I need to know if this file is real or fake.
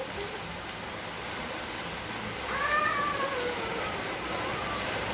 real